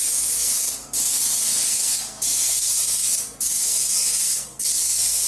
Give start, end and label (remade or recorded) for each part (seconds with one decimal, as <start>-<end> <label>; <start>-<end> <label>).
0.0-5.3 remade